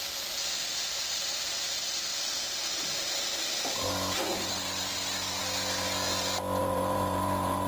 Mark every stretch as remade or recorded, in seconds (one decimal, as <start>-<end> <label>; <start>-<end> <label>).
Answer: 0.0-6.6 recorded; 6.6-7.7 remade